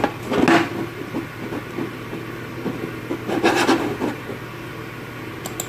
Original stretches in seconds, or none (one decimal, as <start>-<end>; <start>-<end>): 0.0-0.7; 4.1-5.7